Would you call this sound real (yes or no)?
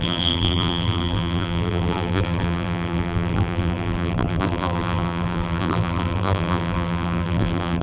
no